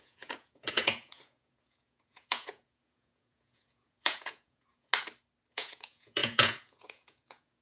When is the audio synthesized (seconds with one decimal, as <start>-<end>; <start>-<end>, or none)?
0.0-4.9; 5.5-7.6